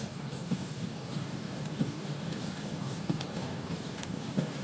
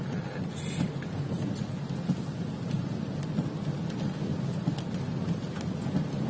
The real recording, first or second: second